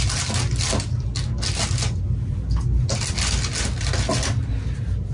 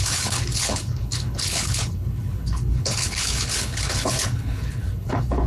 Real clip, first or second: first